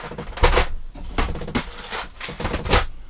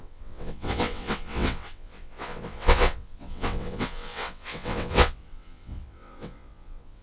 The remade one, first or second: second